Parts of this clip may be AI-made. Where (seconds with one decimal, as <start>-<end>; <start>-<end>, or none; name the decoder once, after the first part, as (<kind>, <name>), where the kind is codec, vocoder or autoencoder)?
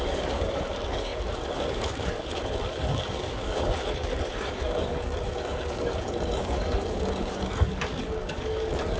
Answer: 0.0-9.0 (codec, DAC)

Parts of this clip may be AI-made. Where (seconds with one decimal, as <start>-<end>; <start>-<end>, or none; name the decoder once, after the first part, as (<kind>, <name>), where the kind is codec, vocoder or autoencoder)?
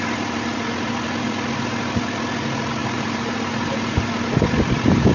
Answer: 2.8-5.1 (vocoder, BigVGAN v2)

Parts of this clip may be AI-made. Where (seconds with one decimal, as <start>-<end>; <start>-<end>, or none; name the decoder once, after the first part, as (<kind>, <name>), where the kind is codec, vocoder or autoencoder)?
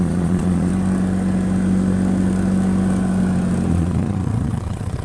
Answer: 0.0-0.7 (vocoder, Vocos); 3.7-5.0